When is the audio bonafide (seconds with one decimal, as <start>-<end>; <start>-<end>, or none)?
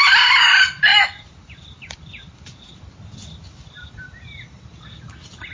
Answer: 0.0-0.9; 3.0-5.5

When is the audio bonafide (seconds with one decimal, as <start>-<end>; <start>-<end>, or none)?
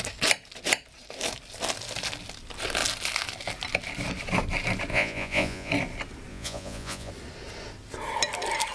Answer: 0.0-4.9; 5.7-6.3; 7.1-8.7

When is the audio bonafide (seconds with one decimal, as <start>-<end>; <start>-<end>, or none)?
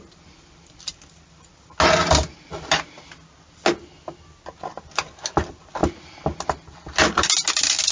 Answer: 0.0-7.9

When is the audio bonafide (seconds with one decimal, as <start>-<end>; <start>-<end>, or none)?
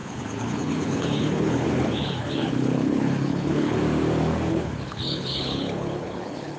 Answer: 3.8-4.5